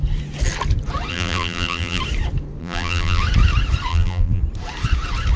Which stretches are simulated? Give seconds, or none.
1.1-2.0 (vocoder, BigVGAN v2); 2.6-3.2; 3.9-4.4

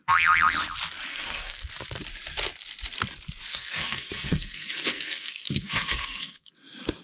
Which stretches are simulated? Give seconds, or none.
1.1-1.7 (codec, SNAC); 3.5-6.5

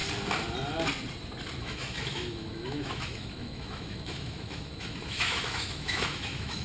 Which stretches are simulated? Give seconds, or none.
1.6-6.6 (autoencoder, DAC-VAE)

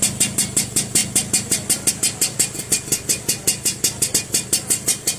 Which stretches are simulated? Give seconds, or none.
none

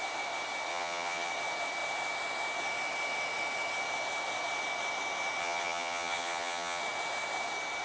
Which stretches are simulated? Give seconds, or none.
0.7-1.3 (vocoder, HiFi-GAN); 5.4-6.8